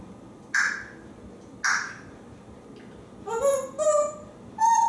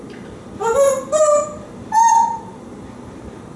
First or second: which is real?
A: first